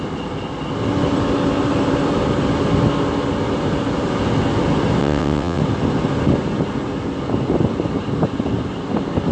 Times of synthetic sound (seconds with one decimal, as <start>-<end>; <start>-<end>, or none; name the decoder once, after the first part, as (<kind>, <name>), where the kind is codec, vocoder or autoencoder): 5.0-5.6 (vocoder, WaveNeXt)